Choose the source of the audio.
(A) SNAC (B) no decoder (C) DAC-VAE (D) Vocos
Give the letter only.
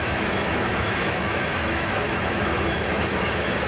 C